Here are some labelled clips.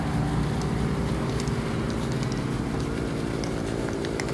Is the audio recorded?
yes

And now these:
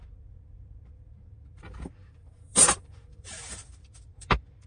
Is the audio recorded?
no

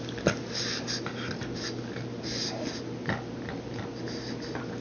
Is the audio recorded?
yes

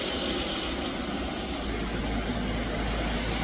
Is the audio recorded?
yes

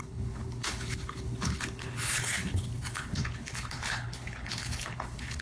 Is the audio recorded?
no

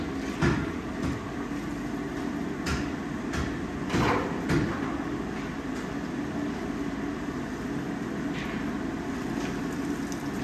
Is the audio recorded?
yes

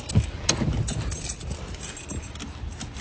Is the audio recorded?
yes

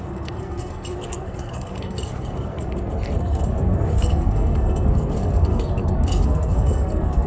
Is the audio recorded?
no